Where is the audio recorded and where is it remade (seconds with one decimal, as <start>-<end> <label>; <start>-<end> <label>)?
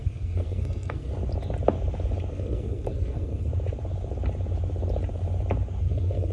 0.0-1.1 remade; 1.1-2.3 recorded; 2.3-3.5 remade; 3.5-5.8 recorded; 5.8-6.3 remade